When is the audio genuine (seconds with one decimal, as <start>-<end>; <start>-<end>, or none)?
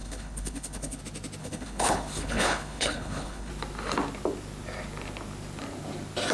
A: 1.0-1.4; 3.5-6.3